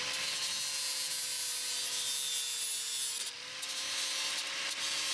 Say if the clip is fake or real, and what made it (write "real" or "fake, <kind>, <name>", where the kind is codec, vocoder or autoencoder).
real